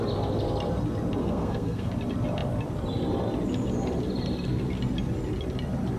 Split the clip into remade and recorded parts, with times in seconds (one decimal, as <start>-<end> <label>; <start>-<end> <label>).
0.0-1.2 recorded; 1.2-1.9 remade; 1.9-6.0 recorded